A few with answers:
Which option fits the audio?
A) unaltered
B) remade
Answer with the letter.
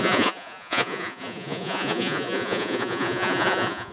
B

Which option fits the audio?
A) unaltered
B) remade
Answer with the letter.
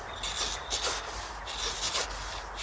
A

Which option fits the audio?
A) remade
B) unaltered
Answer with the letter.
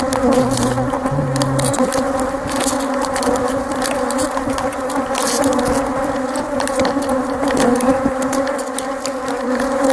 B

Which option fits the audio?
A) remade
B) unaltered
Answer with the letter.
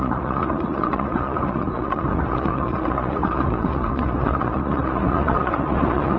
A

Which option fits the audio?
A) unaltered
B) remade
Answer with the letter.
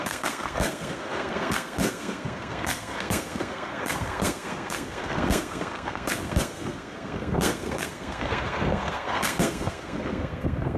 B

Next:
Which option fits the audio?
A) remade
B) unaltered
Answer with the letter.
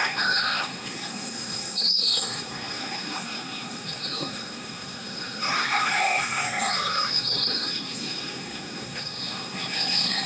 A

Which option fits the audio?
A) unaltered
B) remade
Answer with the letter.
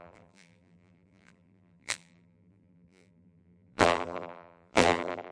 B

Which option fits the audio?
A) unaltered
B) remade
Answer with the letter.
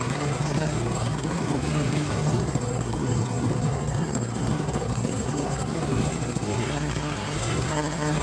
B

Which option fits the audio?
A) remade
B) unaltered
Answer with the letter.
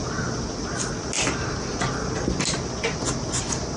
B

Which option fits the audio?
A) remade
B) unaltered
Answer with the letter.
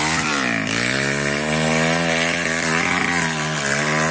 B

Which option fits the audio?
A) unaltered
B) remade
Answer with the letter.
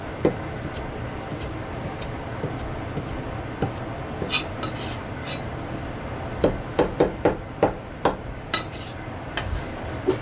A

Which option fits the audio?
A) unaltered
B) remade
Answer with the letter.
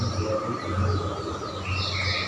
A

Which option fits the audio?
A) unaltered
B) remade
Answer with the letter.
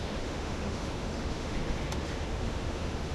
B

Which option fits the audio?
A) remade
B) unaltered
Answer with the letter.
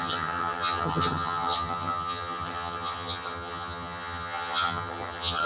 A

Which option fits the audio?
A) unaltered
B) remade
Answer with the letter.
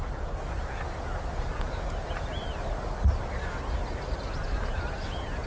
A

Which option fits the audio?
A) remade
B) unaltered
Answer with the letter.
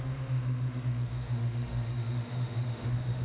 A